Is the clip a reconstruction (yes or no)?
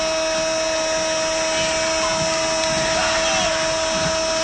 no